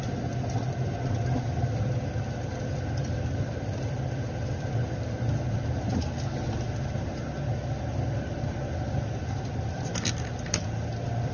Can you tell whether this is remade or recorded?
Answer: recorded